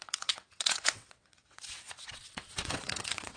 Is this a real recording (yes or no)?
no